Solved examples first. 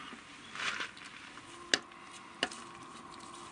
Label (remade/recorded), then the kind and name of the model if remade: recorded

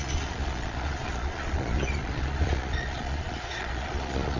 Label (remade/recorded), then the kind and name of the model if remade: remade, vocoder, Vocos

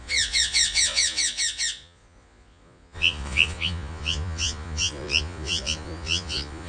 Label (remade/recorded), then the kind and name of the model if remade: remade, vocoder, Vocos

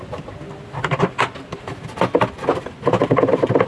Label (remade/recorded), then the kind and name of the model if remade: recorded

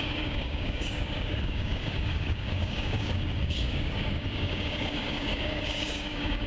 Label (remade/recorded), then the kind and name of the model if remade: remade, codec, DAC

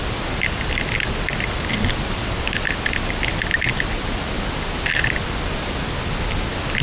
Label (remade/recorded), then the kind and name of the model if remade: recorded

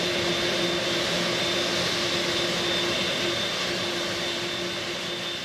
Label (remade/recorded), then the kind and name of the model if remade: recorded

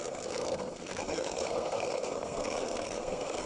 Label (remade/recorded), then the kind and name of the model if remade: remade, codec, SNAC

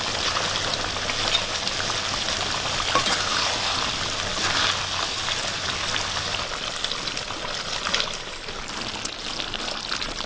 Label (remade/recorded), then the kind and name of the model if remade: recorded